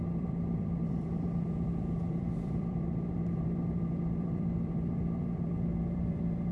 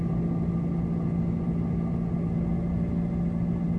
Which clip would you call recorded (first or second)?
second